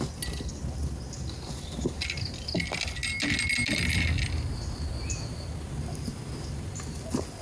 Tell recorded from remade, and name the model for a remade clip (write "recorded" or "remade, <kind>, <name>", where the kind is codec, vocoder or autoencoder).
recorded